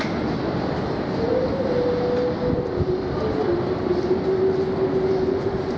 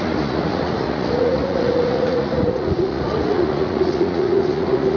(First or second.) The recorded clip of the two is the first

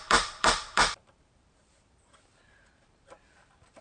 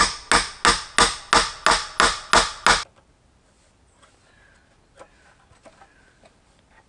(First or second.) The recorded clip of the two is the second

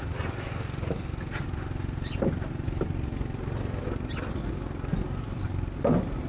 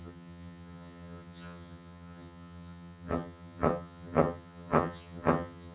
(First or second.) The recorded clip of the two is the first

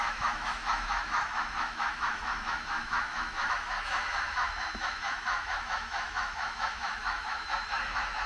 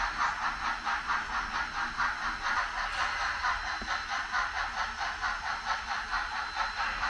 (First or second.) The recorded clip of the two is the second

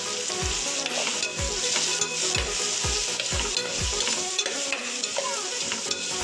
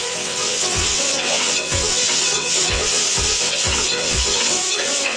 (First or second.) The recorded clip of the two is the first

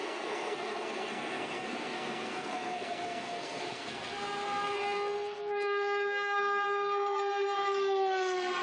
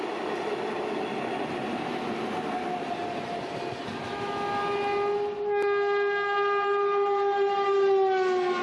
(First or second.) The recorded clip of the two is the second